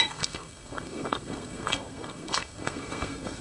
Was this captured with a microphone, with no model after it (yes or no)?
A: no